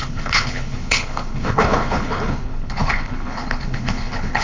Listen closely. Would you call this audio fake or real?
fake